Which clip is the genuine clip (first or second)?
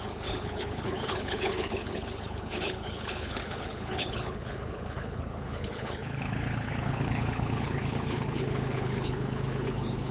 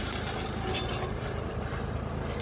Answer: second